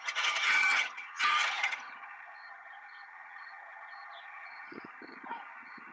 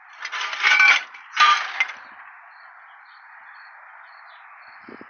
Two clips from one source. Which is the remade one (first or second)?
first